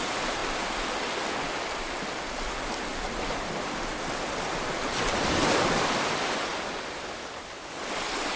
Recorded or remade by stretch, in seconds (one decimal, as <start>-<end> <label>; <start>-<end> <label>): 0.0-8.4 recorded